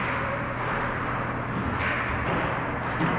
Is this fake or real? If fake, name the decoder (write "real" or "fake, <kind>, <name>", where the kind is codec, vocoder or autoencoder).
real